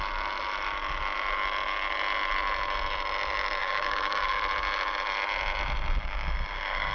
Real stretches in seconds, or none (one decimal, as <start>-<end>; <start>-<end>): 0.0-3.6; 4.4-6.0